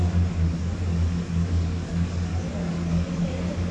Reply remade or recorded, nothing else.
remade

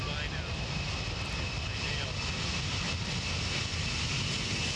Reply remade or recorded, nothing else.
recorded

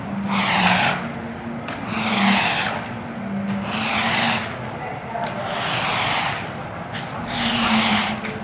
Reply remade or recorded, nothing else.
recorded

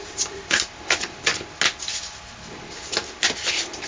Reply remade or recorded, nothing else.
recorded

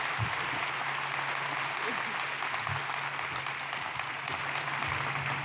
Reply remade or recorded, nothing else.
recorded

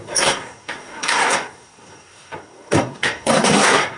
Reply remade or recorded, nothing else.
remade